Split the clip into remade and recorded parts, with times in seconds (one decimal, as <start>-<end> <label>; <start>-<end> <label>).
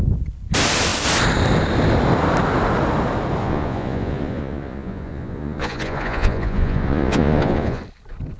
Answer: 0.0-3.4 recorded; 3.4-7.8 remade; 7.8-8.4 recorded